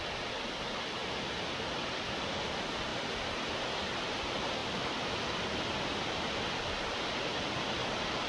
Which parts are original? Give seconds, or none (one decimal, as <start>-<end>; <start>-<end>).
0.0-4.6; 6.9-8.3